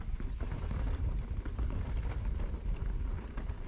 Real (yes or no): yes